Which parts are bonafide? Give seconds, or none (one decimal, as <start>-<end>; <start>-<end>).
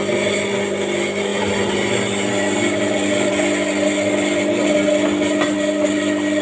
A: 0.0-6.4